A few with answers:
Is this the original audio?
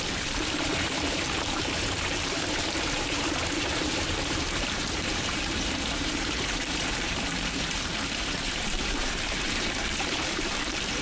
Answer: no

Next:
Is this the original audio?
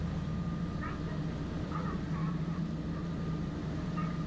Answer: yes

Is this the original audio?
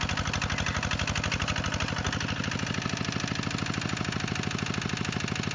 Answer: yes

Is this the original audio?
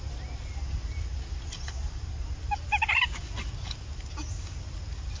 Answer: yes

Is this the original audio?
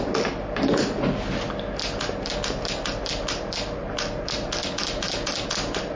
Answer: yes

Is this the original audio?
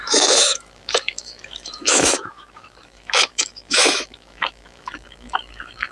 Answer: no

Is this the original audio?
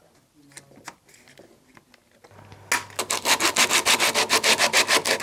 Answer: yes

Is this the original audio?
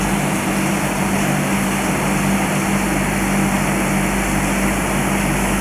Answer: yes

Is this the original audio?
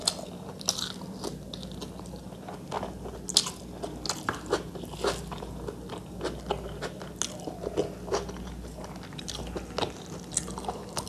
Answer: yes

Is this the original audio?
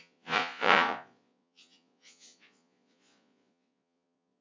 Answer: no